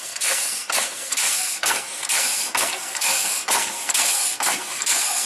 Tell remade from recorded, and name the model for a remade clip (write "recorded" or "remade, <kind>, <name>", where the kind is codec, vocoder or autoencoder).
remade, codec, SNAC